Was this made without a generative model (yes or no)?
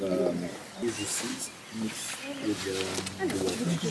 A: yes